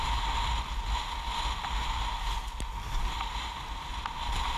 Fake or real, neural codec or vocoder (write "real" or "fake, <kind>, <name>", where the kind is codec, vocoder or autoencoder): real